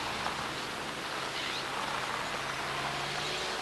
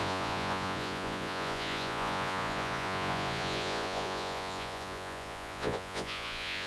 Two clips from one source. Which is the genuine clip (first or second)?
first